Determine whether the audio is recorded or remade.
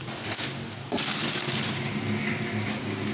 recorded